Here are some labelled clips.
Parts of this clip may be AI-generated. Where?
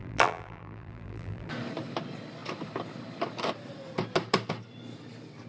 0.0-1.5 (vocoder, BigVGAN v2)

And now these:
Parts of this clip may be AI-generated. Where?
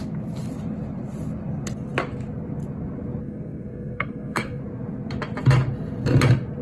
3.2-4.6 (codec, SNAC)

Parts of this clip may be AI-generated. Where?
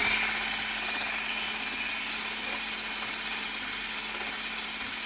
none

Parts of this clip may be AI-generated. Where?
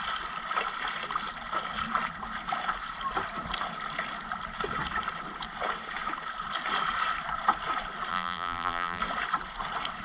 8.1-9.0 (vocoder, BigVGAN v2)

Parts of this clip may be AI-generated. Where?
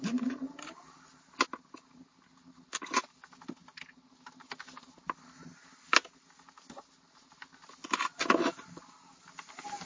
none